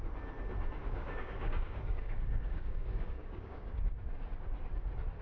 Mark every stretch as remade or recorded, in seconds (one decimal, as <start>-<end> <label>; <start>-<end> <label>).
0.0-0.8 recorded; 0.8-3.8 remade; 3.8-5.2 recorded